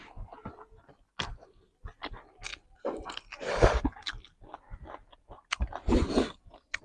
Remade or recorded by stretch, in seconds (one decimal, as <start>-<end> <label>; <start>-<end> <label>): 0.0-6.8 recorded